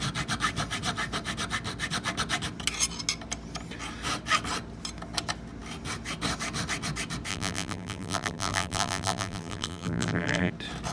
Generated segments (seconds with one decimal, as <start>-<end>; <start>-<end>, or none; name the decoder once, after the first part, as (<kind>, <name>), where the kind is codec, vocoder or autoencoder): 7.3-10.5 (vocoder, BigVGAN v2)